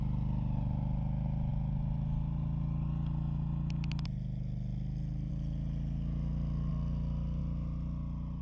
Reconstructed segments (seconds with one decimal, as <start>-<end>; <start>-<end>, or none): none